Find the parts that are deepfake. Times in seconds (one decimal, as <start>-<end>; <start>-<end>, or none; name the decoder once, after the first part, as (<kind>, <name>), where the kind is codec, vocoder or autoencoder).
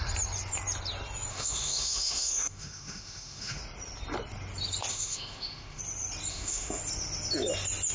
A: 1.3-3.6 (autoencoder, DAC-VAE); 4.9-5.8; 6.3-6.8